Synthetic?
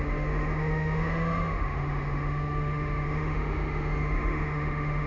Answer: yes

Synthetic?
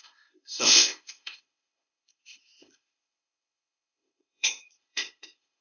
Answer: yes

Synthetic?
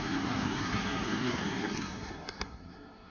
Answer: yes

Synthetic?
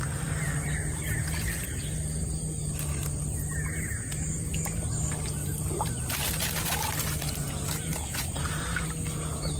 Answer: no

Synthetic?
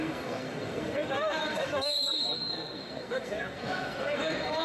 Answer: yes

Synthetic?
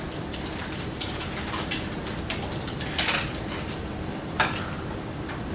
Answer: no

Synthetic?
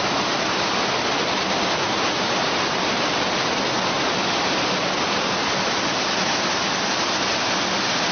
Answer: no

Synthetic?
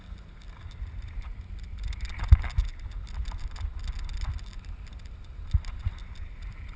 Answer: no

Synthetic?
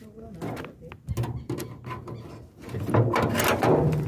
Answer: no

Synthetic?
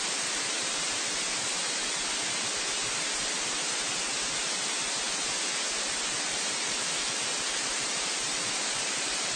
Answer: no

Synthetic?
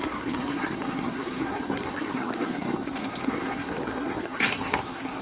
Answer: yes